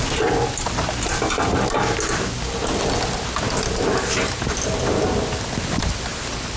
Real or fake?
real